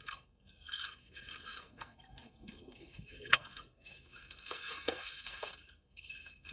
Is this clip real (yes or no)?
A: no